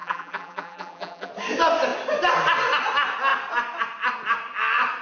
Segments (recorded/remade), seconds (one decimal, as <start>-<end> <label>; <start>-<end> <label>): 0.0-1.3 remade; 1.3-5.0 recorded